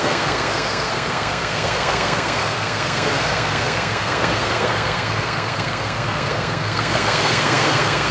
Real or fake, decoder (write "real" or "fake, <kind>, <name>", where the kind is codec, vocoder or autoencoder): fake, codec, SNAC